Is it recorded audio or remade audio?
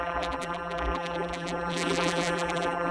remade